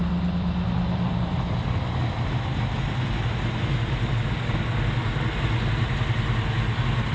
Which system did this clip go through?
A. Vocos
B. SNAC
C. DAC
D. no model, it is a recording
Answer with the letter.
D